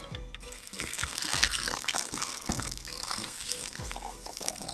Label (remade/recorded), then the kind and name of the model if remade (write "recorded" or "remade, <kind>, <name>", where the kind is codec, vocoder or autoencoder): remade, codec, SNAC